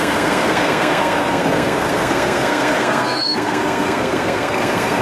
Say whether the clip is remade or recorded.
remade